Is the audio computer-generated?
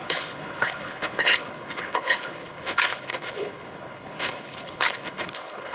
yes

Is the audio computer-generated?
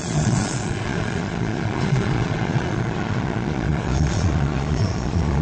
yes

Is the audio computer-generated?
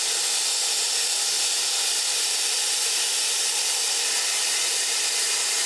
no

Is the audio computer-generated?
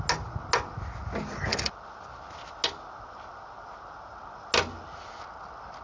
no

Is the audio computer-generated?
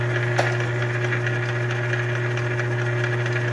no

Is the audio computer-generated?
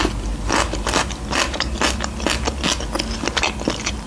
no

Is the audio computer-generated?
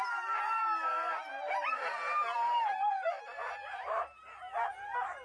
no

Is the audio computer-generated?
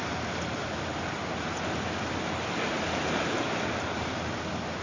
no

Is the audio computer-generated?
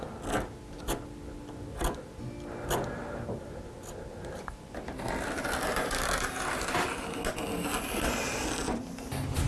no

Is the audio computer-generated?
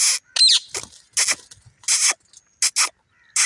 no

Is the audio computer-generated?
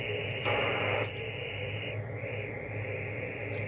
no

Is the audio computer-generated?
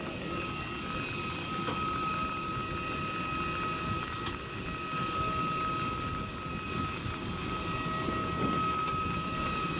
no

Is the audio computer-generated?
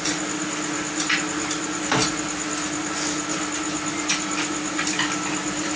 no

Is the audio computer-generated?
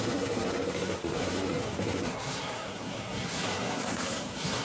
yes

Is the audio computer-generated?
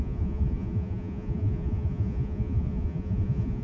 yes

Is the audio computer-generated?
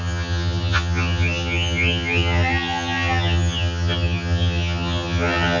yes